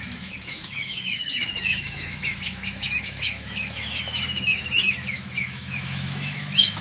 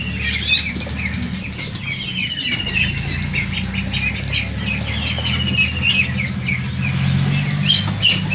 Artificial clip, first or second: first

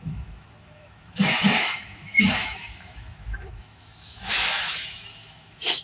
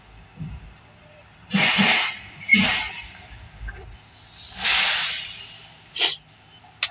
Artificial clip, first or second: first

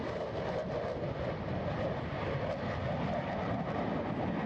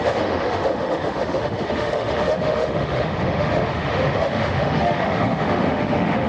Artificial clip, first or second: second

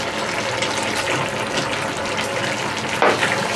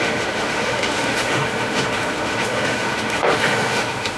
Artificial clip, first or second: second